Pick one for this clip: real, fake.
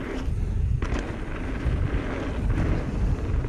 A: real